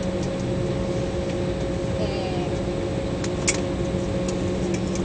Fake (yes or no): no